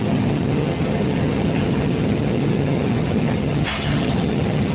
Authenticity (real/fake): fake